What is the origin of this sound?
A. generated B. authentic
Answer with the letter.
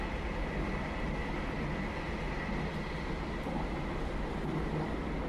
B